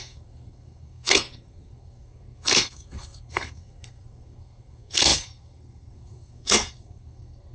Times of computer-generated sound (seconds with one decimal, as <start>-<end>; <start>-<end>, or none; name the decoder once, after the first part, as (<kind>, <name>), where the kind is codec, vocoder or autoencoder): 0.0-7.5 (codec, SNAC)